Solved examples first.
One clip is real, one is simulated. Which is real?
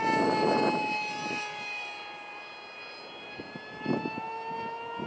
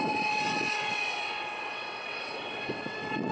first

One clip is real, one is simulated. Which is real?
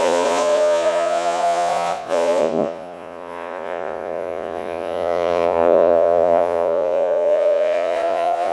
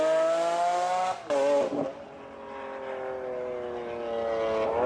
second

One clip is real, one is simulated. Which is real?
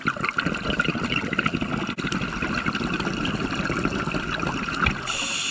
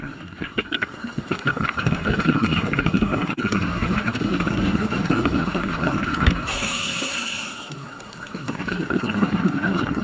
first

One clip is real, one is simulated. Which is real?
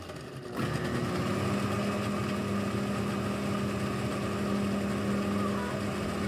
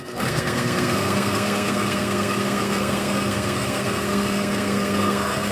first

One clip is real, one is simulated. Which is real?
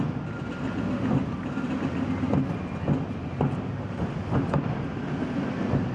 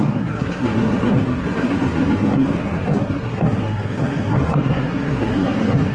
first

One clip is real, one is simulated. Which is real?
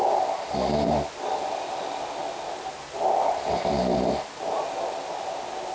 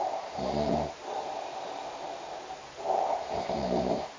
first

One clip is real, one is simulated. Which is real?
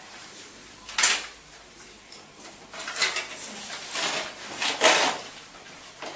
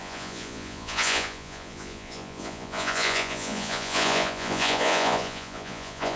first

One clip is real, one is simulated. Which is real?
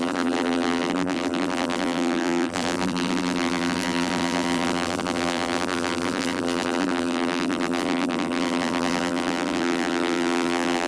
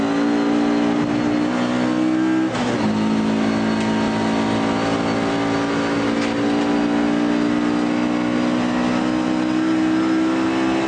second